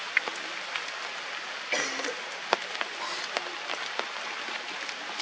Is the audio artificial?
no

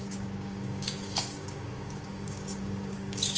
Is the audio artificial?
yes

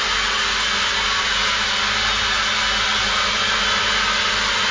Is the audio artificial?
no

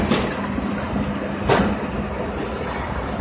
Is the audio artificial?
no